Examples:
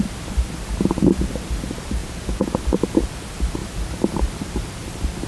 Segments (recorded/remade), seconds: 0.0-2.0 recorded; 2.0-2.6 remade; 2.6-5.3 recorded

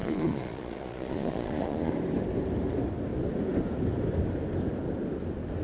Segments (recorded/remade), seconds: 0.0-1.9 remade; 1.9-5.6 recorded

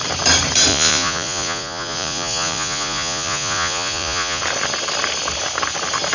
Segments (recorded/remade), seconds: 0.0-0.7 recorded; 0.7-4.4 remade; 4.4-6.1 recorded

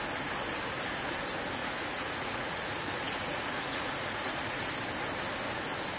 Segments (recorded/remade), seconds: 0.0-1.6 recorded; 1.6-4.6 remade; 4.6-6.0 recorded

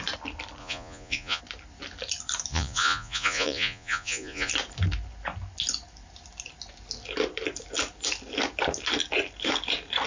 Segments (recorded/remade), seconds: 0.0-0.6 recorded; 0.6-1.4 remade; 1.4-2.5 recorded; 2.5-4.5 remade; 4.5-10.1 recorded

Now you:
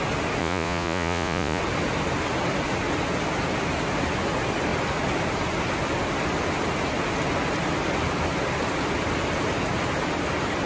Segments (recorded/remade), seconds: 0.0-0.4 recorded; 0.4-1.6 remade; 1.6-10.7 recorded